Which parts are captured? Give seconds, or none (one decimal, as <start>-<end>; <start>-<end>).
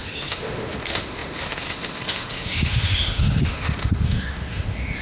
none